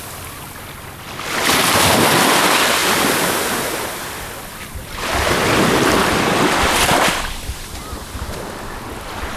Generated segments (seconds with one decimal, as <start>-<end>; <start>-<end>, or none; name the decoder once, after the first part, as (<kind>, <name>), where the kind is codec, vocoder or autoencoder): none